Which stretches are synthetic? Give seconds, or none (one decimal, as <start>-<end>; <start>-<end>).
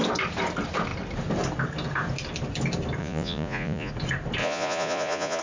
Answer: 3.0-3.9; 4.4-5.4